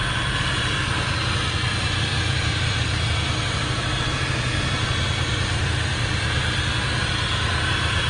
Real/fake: real